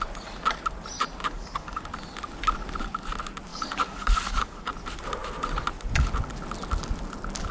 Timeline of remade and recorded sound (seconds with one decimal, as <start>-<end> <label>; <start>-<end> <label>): 0.0-1.2 recorded; 1.2-1.8 remade; 1.8-3.5 recorded; 3.5-4.7 remade; 4.7-7.5 recorded